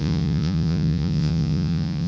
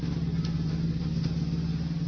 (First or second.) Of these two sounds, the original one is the second